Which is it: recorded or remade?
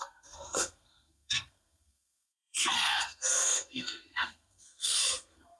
remade